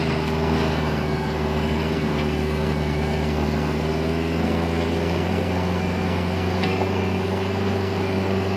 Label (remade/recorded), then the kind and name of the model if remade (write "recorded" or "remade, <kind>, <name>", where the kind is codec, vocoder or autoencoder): remade, codec, SNAC